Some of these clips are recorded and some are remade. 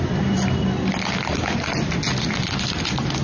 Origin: recorded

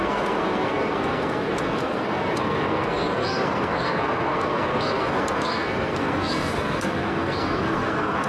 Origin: remade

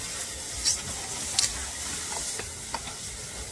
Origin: recorded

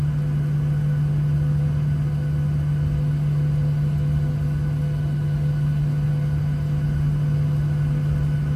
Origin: recorded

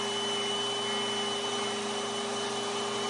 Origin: recorded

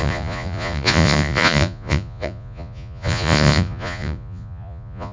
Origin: remade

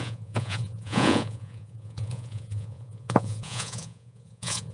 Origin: remade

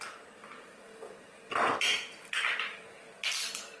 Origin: recorded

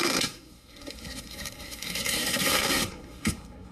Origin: remade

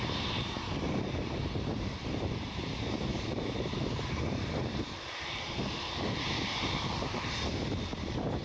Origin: remade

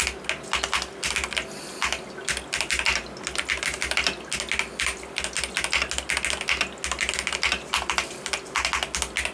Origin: recorded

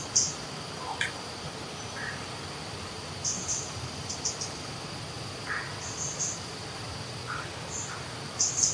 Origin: recorded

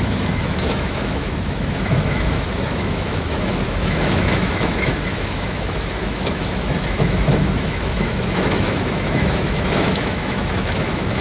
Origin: remade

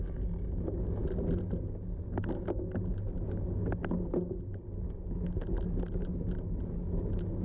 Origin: recorded